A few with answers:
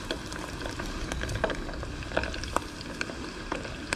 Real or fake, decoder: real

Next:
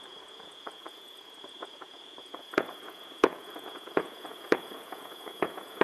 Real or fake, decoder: fake, vocoder, Vocos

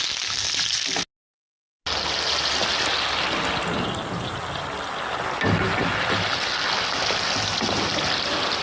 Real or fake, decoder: real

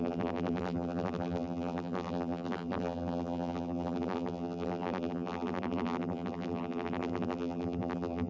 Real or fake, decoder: fake, vocoder, BigVGAN v2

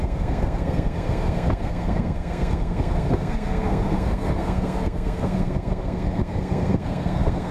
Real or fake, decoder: fake, codec, SNAC